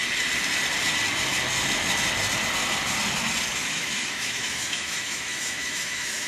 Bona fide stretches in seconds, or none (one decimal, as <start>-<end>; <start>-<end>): 0.0-3.6